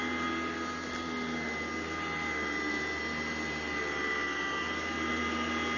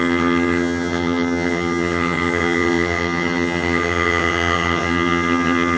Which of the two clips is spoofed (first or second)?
second